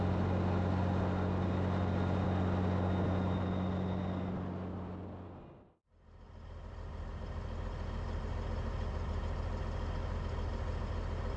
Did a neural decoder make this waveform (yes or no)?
no